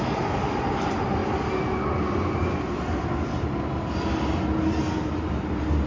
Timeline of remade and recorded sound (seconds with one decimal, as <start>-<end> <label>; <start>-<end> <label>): 0.0-5.9 recorded